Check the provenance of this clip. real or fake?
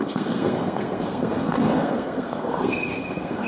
fake